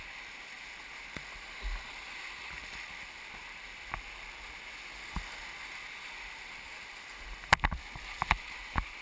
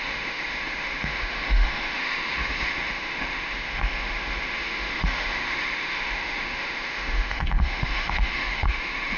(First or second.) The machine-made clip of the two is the second